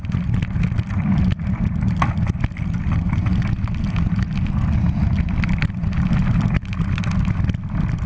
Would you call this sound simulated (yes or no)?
no